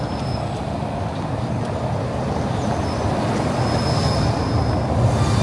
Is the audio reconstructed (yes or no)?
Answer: no